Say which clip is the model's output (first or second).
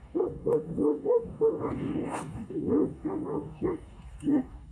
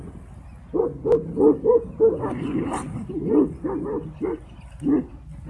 first